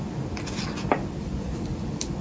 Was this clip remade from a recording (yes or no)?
no